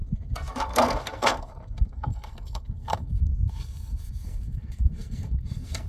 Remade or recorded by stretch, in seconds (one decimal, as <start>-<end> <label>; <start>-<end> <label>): 0.0-5.9 remade